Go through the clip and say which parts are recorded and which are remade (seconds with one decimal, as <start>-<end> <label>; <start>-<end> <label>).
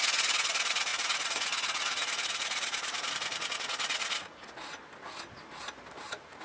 0.0-4.8 remade; 4.8-6.4 recorded